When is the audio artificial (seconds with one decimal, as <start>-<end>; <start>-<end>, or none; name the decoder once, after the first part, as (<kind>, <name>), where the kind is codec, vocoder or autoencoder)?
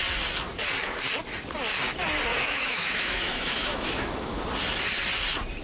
2.3-4.4 (autoencoder, DAC-VAE)